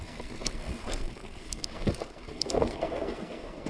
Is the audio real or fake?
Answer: fake